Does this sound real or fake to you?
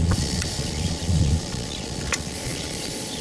fake